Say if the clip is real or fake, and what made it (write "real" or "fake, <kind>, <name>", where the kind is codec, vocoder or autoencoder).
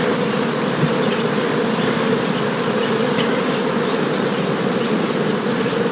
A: real